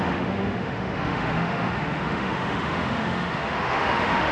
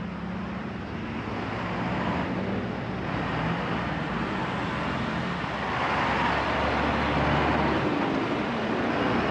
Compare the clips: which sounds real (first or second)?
second